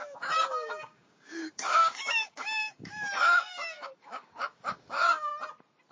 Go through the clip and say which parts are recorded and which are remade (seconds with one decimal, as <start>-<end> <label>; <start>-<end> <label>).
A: 0.0-5.3 remade; 5.3-5.9 recorded